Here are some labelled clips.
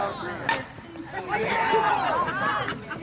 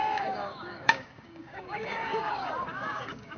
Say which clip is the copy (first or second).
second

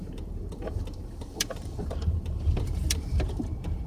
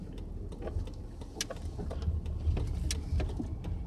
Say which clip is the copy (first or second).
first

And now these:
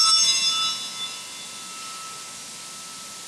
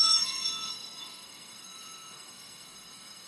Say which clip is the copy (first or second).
second